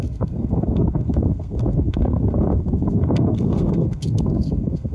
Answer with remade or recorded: remade